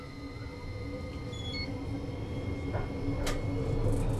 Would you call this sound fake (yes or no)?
no